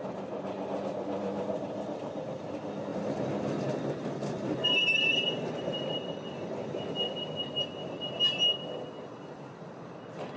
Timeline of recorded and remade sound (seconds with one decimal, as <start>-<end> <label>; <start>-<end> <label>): 0.0-2.9 recorded; 2.9-5.5 remade; 5.5-10.4 recorded